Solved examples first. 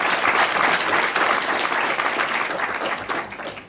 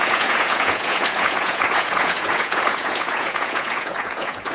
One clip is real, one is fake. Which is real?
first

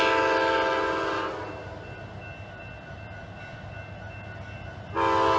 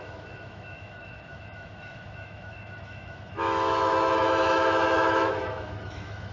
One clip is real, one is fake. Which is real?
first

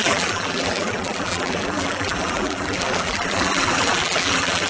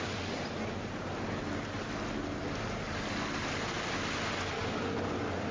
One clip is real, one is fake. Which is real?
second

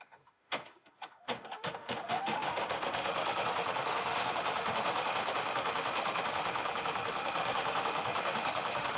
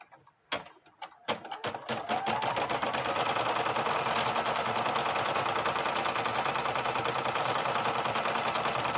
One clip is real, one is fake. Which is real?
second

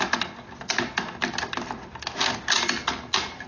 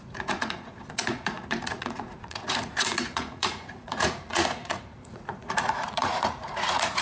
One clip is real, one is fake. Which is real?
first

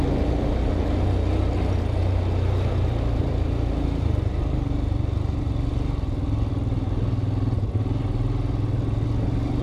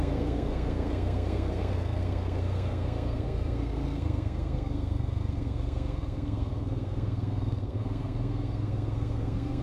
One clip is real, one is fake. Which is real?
first